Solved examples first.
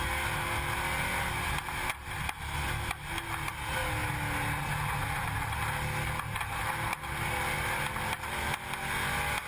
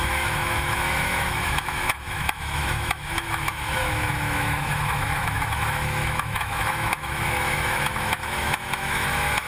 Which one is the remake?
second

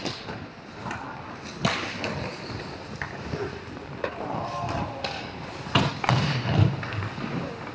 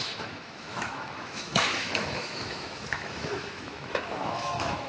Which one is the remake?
second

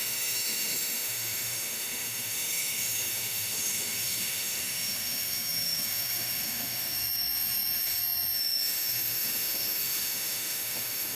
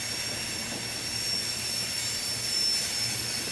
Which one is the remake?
first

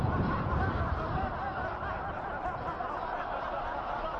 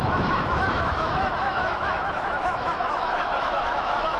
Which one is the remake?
second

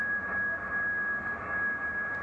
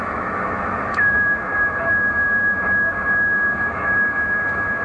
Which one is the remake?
second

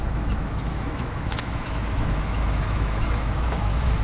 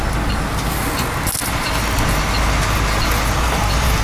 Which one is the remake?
first